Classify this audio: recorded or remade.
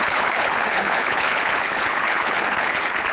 remade